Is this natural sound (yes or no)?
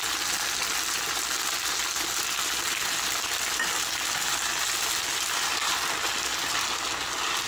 yes